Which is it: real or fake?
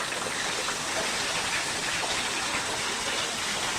real